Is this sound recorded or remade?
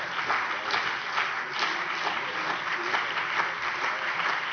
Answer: recorded